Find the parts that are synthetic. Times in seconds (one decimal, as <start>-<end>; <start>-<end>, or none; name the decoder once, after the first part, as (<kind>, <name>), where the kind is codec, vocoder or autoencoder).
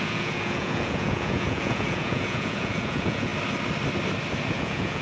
0.0-3.3 (vocoder, Vocos); 4.5-5.0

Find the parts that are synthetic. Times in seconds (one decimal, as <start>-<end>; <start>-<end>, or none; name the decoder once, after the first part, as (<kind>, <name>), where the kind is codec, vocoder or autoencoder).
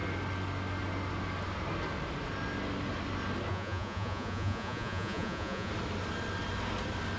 3.5-5.7 (vocoder, Vocos)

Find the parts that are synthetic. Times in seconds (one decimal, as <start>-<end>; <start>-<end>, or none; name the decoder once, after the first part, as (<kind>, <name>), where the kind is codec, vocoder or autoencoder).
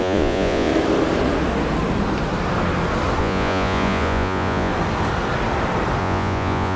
0.0-0.7 (vocoder, Vocos); 3.2-4.7; 6.0-6.8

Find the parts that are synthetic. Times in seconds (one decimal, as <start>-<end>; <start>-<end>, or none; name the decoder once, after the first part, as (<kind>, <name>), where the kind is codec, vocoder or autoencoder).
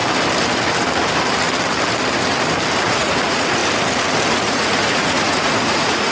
2.8-3.6 (vocoder, Vocos); 4.3-6.1